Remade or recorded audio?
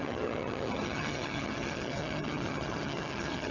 remade